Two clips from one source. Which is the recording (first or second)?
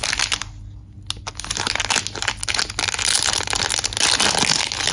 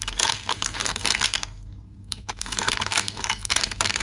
first